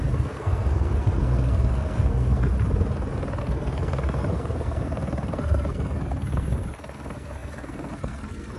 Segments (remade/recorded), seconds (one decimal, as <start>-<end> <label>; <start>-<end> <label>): 0.0-2.5 remade; 2.5-3.4 recorded; 3.4-8.6 remade

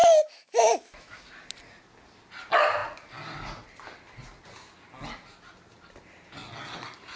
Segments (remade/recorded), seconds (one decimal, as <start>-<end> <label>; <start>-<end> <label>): 0.0-1.2 remade; 1.2-7.2 recorded

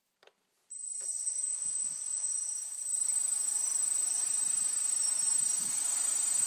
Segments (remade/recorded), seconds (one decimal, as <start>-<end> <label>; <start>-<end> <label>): 0.0-1.5 recorded; 1.5-2.3 remade; 2.3-6.5 recorded

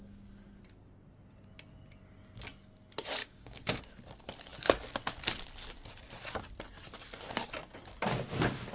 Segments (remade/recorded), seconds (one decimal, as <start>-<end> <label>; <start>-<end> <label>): 0.0-3.2 recorded; 3.2-3.8 remade; 3.8-8.7 recorded

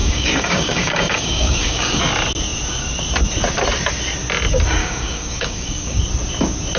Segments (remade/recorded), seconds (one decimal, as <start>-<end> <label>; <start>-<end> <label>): 0.0-2.0 remade; 2.0-4.8 recorded; 4.8-6.0 remade; 6.0-6.8 recorded